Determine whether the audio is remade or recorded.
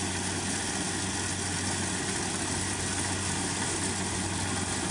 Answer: recorded